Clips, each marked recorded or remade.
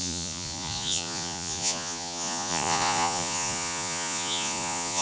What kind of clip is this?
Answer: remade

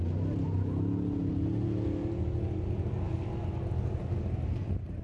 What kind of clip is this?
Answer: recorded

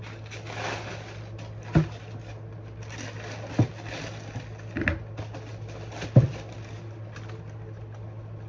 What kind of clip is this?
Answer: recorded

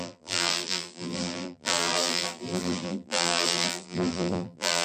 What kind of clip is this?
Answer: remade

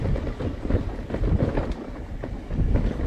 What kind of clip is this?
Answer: recorded